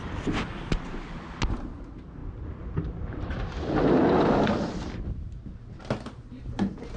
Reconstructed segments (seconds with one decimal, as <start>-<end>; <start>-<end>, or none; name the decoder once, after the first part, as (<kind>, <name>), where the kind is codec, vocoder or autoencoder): none